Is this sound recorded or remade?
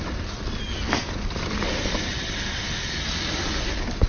recorded